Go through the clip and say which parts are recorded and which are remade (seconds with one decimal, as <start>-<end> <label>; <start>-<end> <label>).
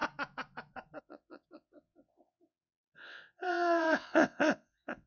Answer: 0.0-1.0 recorded; 1.0-5.1 remade